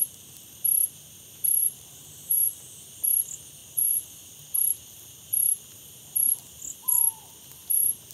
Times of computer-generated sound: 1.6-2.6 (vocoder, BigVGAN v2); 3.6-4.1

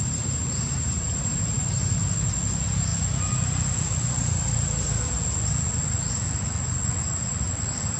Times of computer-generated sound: 0.0-2.0 (vocoder, BigVGAN v2)

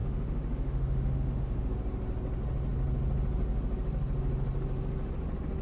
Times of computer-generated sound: 0.0-1.7 (autoencoder, DAC-VAE)

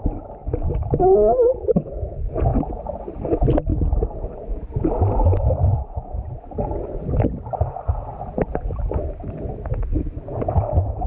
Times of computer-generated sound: none

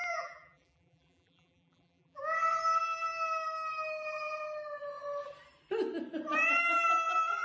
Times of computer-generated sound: 0.0-2.2 (vocoder, BigVGAN v2)

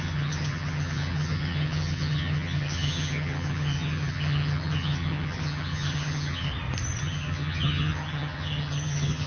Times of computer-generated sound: 0.0-6.5 (vocoder, HiFi-GAN); 7.0-9.3

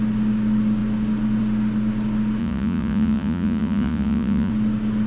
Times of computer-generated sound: 2.4-4.5 (vocoder, Vocos)